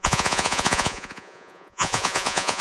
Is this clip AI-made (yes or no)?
yes